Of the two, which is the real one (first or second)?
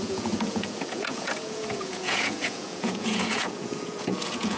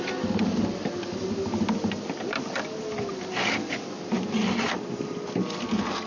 second